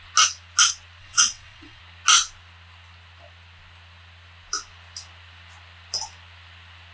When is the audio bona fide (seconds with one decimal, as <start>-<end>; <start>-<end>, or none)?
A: 0.0-1.0; 1.8-6.9